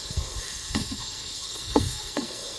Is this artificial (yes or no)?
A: yes